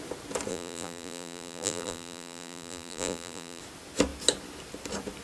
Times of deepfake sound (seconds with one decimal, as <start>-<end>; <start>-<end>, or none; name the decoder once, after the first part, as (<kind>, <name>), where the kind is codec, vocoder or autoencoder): 0.5-3.6 (vocoder, BigVGAN v2)